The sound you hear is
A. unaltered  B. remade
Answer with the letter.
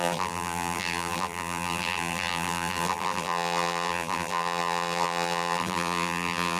B